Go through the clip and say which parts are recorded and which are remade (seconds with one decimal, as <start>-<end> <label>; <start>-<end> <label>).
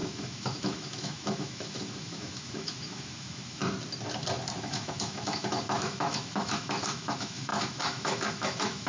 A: 0.0-3.6 remade; 3.6-4.6 recorded; 4.6-8.9 remade